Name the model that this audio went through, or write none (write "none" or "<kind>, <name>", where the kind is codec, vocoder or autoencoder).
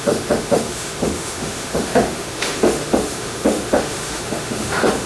autoencoder, DAC-VAE